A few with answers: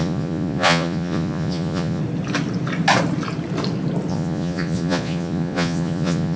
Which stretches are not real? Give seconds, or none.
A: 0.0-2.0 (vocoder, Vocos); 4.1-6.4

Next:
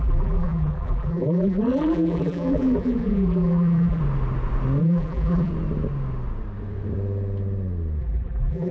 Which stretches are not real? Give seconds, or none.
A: 0.0-4.0 (vocoder, BigVGAN v2); 4.8-5.5; 8.0-8.7

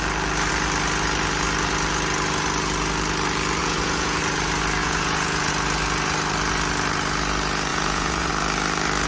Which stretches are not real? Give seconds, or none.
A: 3.6-4.2 (vocoder, Vocos); 4.8-5.5; 7.7-8.3

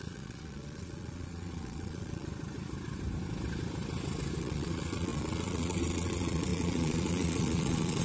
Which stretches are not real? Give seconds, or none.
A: 0.0-2.3 (vocoder, Vocos); 4.4-8.0

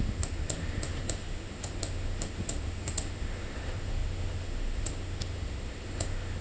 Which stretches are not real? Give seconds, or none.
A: 0.0-6.4 (autoencoder, DAC-VAE)

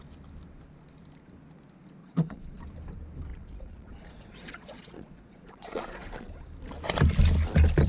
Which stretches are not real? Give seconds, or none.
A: 2.0-2.6 (vocoder, Vocos); 3.3-6.3

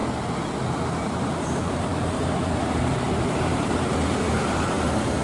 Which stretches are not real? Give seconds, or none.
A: 0.9-5.2 (vocoder, BigVGAN v2)